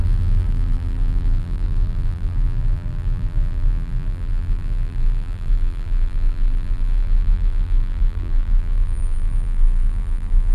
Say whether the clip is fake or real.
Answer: fake